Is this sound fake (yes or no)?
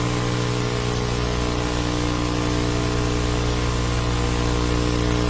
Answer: no